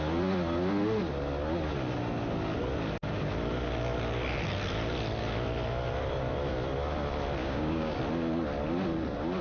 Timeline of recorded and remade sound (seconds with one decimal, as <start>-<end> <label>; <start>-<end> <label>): 0.0-7.4 recorded; 7.4-8.0 remade; 8.0-9.4 recorded